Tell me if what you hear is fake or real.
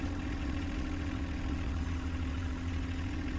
fake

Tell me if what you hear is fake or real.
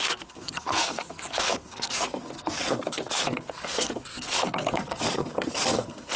fake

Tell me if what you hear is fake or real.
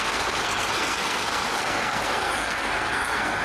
fake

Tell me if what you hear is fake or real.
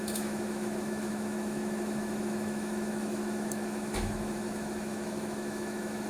fake